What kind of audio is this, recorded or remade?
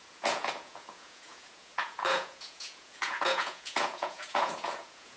remade